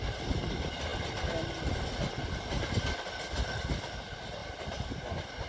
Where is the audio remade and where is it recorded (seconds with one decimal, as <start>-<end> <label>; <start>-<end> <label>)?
0.0-5.5 recorded